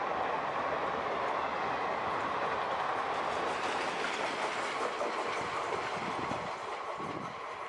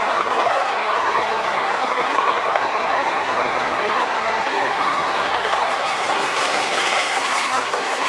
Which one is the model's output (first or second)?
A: second